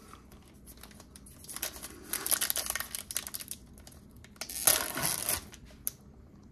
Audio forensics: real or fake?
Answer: real